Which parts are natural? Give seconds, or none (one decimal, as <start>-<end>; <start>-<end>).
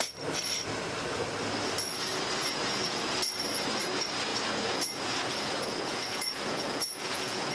0.0-2.4; 3.1-4.3